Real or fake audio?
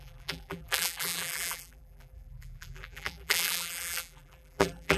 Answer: fake